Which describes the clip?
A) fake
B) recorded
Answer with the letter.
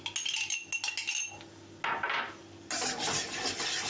B